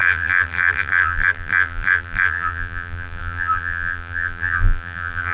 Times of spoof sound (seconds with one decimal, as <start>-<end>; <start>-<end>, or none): 0.0-5.3